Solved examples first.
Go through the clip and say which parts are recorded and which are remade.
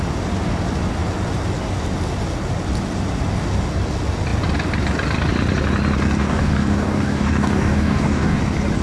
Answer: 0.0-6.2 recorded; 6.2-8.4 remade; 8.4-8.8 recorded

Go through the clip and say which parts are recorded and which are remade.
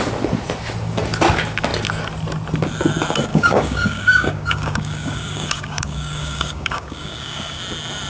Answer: 0.0-3.3 recorded; 3.3-7.6 remade; 7.6-8.1 recorded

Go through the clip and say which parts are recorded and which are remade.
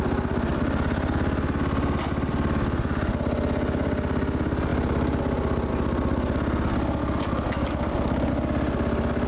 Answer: 0.0-7.0 recorded; 7.0-8.3 remade; 8.3-9.3 recorded